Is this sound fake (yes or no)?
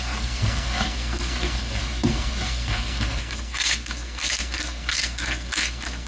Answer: yes